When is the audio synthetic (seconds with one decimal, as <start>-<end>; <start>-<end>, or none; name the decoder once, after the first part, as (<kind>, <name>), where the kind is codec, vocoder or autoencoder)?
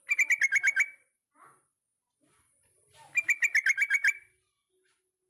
none